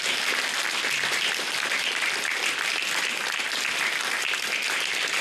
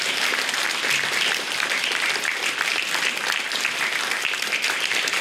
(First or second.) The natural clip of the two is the first